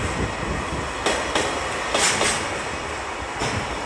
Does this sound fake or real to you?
real